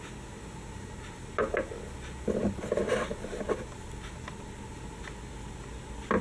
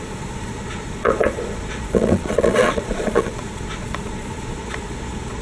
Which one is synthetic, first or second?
second